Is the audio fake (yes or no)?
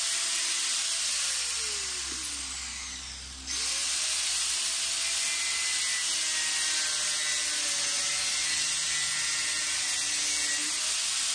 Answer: no